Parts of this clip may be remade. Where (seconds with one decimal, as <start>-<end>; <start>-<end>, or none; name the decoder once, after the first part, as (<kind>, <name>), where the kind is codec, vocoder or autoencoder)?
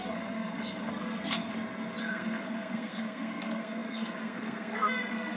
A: 0.0-1.5 (codec, SNAC); 2.0-5.4